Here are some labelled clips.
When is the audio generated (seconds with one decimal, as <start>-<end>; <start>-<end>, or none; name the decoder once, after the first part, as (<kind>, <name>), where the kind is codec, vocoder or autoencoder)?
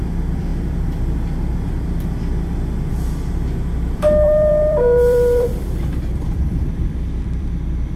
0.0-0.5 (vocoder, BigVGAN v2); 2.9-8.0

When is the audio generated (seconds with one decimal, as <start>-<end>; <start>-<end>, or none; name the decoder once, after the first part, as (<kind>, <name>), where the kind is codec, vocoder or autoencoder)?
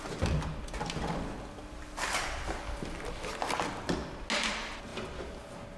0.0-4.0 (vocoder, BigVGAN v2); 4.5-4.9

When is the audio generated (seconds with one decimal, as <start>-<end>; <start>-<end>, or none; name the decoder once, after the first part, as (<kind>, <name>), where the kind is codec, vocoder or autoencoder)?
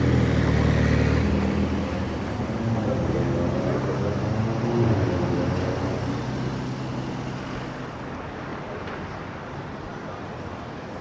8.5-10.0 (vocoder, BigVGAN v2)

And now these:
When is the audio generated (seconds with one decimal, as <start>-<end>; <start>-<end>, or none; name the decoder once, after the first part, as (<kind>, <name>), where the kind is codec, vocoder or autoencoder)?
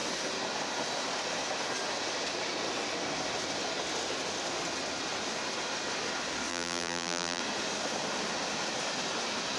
6.5-7.4 (vocoder, BigVGAN v2)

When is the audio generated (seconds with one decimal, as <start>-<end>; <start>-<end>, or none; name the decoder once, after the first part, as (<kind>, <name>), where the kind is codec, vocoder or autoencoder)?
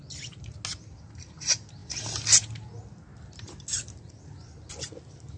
none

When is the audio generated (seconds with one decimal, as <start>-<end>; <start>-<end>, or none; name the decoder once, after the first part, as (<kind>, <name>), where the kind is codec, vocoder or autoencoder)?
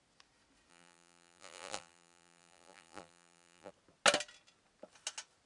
0.7-3.7 (vocoder, BigVGAN v2)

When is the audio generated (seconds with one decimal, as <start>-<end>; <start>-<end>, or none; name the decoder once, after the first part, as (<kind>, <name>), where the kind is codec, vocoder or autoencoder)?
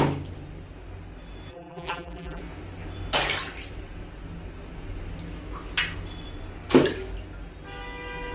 1.5-2.4 (vocoder, BigVGAN v2)